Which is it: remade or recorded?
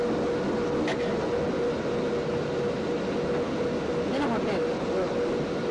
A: recorded